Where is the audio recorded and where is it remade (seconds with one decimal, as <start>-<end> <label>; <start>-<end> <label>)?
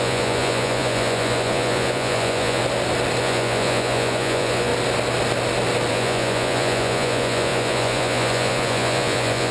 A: 0.0-2.6 remade; 2.6-3.2 recorded; 3.2-4.7 remade; 4.7-5.9 recorded; 5.9-9.5 remade